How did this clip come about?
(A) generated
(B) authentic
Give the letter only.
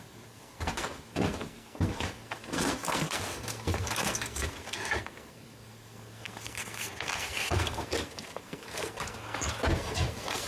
A